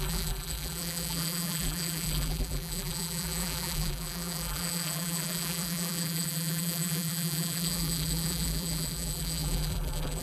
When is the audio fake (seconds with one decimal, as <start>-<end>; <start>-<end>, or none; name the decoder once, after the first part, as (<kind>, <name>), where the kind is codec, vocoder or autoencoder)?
0.0-10.2 (vocoder, BigVGAN v2)